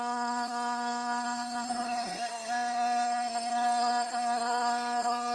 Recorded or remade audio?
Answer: remade